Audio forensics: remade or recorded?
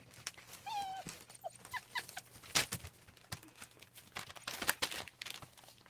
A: recorded